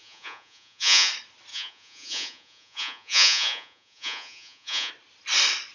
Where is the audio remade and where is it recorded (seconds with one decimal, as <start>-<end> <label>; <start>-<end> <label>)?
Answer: 0.0-1.1 remade; 1.1-1.5 recorded; 1.5-4.9 remade; 4.9-5.7 recorded